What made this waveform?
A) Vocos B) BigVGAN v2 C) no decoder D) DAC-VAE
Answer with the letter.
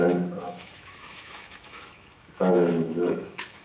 D